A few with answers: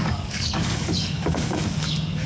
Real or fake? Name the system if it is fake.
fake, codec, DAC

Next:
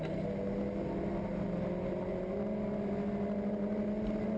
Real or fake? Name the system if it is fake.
real